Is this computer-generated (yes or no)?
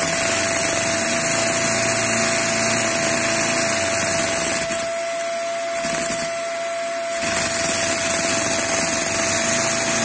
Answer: no